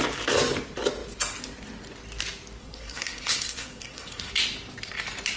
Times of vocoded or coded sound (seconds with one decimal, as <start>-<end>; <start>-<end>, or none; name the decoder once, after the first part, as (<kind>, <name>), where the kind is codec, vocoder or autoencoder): 2.6-4.3 (codec, SNAC)